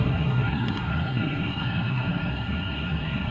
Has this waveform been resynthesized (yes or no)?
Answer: yes